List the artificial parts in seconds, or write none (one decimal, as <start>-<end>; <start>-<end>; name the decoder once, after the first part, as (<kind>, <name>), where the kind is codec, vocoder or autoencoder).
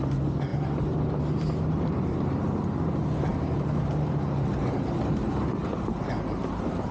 0.5-2.6 (vocoder, BigVGAN v2); 3.3-5.0